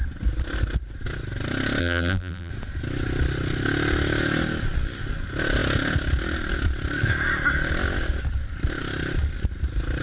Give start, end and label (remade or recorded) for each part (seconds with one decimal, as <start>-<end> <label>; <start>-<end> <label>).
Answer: 0.0-1.8 recorded; 1.8-2.5 remade; 2.5-10.0 recorded